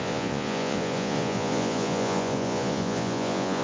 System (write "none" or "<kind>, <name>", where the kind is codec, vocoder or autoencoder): vocoder, Vocos